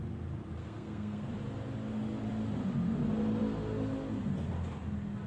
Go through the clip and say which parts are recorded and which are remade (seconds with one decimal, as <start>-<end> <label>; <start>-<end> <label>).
0.0-0.6 recorded; 0.6-1.3 remade; 1.3-5.3 recorded